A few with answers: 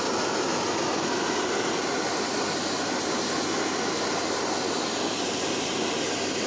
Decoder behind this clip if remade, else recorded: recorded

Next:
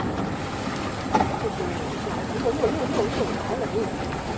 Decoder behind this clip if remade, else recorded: recorded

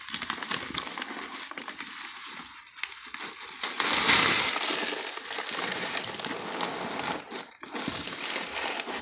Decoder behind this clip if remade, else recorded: recorded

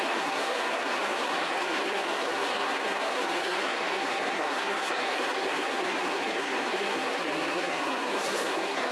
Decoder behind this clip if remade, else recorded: remade, codec, SNAC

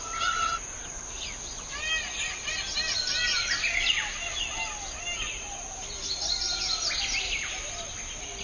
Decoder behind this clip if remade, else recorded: recorded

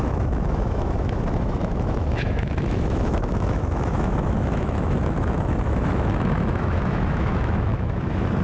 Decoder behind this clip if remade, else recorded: remade, autoencoder, DAC-VAE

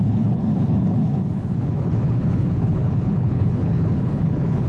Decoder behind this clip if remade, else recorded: remade, codec, HILCodec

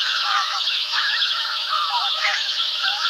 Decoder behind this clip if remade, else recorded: remade, autoencoder, DAC-VAE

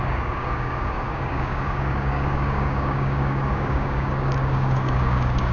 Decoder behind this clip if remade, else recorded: remade, codec, DAC